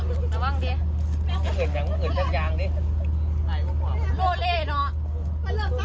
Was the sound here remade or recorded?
recorded